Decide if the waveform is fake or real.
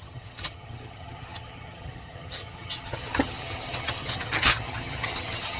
fake